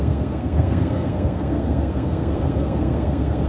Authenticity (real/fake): fake